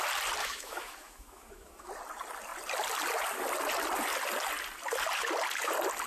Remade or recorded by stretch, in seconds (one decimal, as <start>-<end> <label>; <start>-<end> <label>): 0.0-0.4 recorded; 0.4-1.9 remade; 1.9-6.1 recorded